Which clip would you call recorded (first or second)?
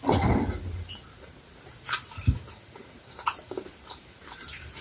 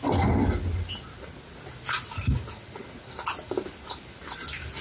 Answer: second